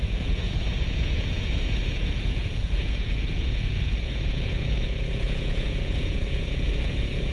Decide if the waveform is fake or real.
fake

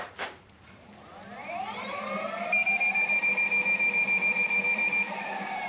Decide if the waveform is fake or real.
fake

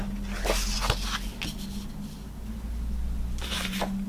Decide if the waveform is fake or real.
real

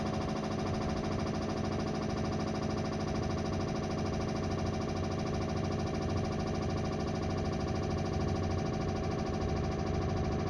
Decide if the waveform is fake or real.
real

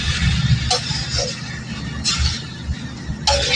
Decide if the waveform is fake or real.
real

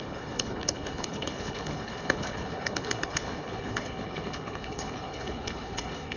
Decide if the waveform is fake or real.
fake